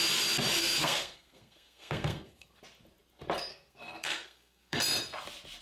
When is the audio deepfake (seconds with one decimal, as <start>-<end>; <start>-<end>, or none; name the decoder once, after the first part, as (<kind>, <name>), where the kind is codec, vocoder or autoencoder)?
0.6-2.6 (codec, SNAC); 3.5-4.8